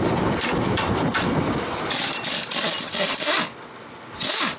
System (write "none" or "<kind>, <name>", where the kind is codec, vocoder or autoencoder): none